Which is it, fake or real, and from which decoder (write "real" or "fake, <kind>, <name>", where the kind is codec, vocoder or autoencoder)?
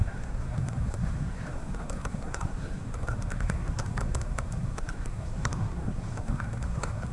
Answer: fake, codec, SNAC